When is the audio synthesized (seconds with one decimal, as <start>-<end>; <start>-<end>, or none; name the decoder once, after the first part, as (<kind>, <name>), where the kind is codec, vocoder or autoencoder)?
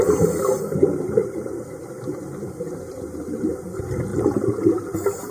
1.2-3.5 (vocoder, BigVGAN v2); 4.1-5.3